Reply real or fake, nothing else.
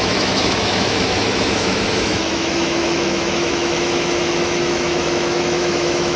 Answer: fake